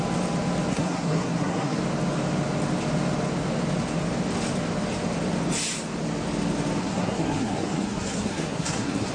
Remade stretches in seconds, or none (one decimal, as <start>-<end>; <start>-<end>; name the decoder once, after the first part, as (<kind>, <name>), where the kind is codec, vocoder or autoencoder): 0.7-1.8 (codec, SNAC); 6.8-9.1